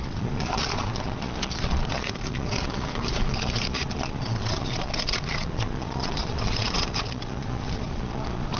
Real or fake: fake